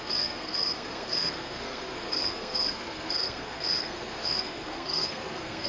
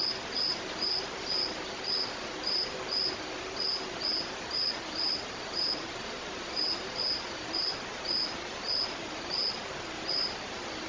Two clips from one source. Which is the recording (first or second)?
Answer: second